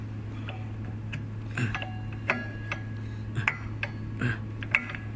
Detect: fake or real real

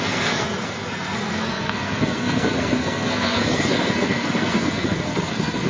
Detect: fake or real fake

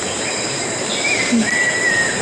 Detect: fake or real real